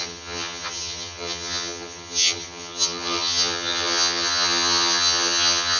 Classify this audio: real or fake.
fake